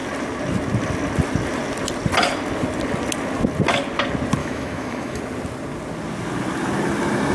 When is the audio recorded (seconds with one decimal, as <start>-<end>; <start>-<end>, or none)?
0.0-4.4; 5.2-7.3